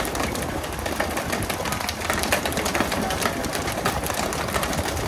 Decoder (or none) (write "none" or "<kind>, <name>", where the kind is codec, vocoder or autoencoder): none